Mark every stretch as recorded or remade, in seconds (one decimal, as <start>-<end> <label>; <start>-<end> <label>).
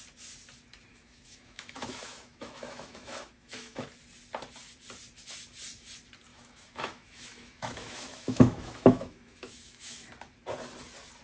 0.0-0.9 recorded; 0.9-3.9 remade; 3.9-6.3 recorded; 6.3-10.1 remade; 10.1-11.2 recorded